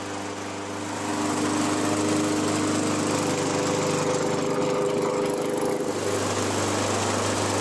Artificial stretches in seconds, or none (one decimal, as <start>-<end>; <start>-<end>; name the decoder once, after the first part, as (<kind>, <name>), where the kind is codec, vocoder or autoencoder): none